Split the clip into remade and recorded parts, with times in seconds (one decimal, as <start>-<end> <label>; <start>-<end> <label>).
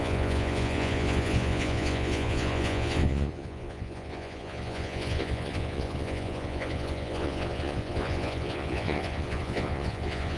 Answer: 0.0-10.4 remade